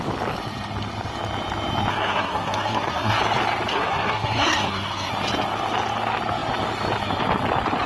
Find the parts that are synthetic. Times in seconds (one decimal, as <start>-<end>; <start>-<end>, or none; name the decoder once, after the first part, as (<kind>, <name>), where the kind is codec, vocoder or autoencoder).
1.9-3.2 (codec, SNAC); 3.7-5.1